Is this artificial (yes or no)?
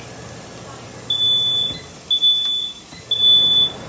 no